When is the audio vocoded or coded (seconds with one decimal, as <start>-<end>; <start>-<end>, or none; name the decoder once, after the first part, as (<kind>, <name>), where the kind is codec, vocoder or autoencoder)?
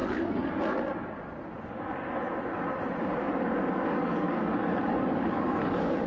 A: 0.0-0.6 (codec, DAC); 3.0-6.1